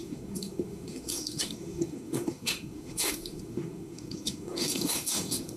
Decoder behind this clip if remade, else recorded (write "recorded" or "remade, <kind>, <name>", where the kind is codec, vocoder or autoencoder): remade, codec, SNAC